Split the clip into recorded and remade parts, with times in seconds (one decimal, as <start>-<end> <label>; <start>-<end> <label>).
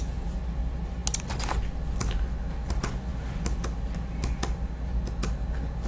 0.0-5.9 recorded